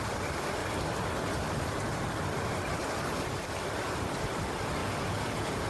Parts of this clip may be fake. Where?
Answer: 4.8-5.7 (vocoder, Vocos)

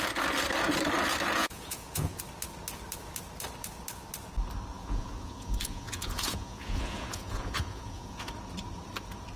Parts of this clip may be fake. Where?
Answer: 1.4-2.2 (vocoder, Vocos); 4.7-8.3

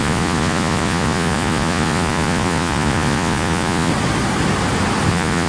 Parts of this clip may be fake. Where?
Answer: 0.0-3.9 (vocoder, Vocos); 5.1-5.5